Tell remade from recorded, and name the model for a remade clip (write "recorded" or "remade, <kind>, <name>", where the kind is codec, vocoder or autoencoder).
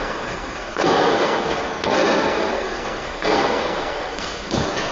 remade, codec, SNAC